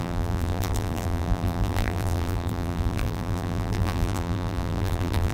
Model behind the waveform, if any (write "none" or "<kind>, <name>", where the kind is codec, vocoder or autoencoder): vocoder, BigVGAN v2